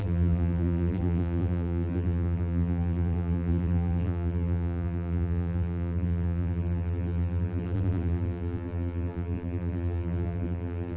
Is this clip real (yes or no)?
no